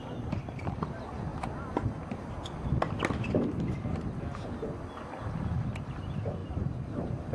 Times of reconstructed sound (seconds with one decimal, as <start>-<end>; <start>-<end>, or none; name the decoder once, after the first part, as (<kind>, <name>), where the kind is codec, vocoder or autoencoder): 6.4-7.3 (vocoder, BigVGAN v2)